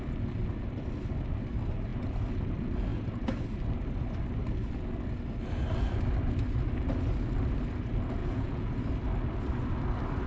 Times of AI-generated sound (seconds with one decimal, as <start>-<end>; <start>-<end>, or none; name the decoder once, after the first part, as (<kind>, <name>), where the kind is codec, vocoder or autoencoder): 8.2-8.7 (vocoder, Vocos)